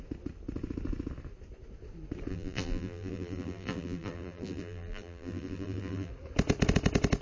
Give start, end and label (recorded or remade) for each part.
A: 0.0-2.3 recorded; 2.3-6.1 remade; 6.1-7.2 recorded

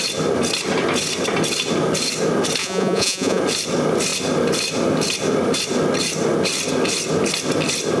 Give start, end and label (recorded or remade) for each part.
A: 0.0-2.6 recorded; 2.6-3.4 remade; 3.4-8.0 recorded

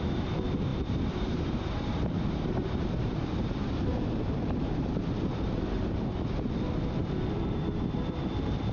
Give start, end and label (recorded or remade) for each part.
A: 0.0-6.1 remade; 6.1-6.7 recorded; 6.7-8.7 remade

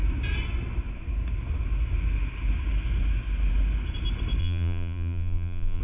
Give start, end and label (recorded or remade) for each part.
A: 0.0-4.4 recorded; 4.4-5.8 remade

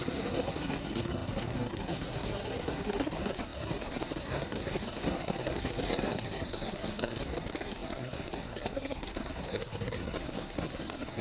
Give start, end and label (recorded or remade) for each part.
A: 0.0-11.2 remade